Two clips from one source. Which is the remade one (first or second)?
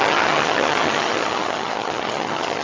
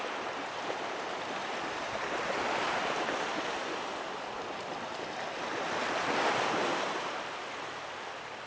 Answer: first